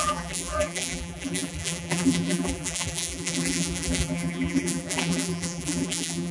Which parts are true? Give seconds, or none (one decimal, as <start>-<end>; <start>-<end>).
none